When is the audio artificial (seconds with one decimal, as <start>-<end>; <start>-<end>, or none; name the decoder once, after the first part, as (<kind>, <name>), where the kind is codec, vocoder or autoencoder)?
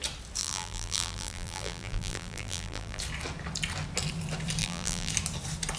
0.4-3.0 (vocoder, BigVGAN v2); 4.6-5.1